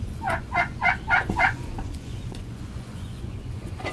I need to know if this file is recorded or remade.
remade